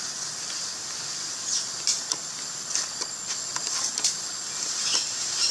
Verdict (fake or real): real